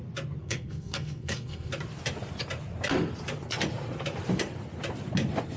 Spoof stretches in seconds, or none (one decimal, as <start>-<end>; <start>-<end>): 0.4-1.7